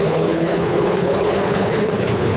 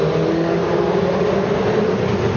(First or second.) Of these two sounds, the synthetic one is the first